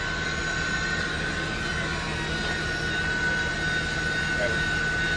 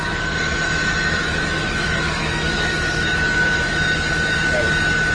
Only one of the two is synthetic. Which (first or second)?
second